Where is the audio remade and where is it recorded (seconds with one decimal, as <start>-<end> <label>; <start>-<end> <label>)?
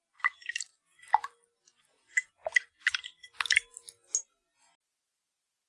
0.0-5.7 recorded